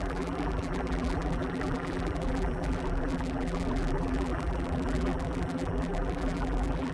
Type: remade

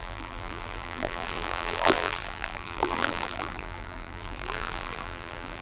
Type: remade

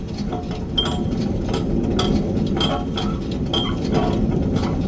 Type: recorded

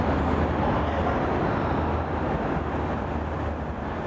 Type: recorded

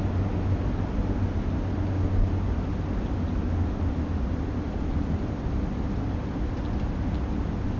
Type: recorded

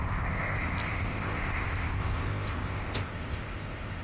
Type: remade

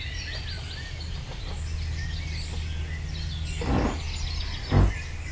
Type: recorded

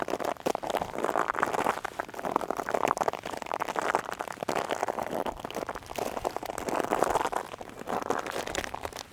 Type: recorded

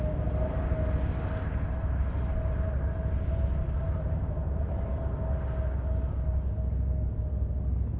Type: recorded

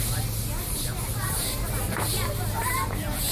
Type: recorded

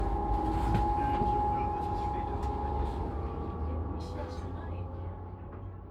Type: recorded